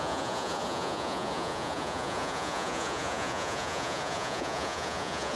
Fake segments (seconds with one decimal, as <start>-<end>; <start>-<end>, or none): 0.0-5.4